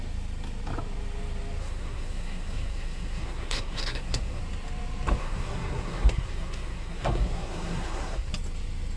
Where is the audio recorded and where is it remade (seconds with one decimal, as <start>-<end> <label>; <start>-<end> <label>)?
0.0-1.6 recorded; 1.6-4.4 remade; 4.4-5.2 recorded; 5.2-8.3 remade; 8.3-9.0 recorded